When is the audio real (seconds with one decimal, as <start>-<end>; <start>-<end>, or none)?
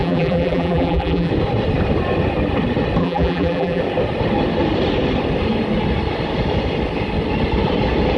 1.3-3.0; 3.8-8.2